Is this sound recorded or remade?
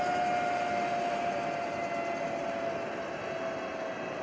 recorded